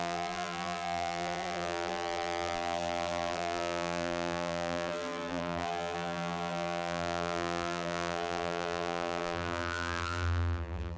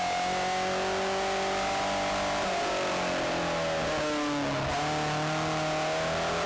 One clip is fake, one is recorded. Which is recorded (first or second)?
second